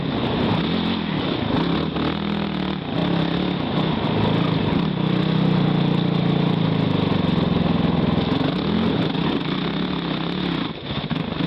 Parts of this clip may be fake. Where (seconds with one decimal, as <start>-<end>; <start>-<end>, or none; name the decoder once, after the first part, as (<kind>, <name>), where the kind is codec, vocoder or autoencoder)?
none